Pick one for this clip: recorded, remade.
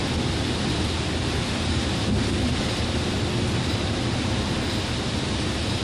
recorded